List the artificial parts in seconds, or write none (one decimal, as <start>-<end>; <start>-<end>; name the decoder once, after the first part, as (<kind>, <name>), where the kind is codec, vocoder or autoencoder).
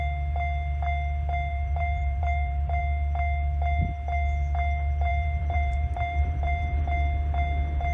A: 1.5-2.8 (vocoder, BigVGAN v2); 5.1-6.8